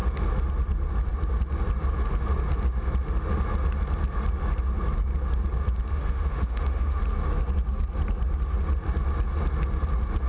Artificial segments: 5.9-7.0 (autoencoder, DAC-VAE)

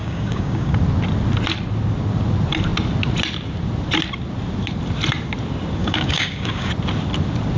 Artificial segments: 0.0-0.8 (codec, DAC); 5.8-6.7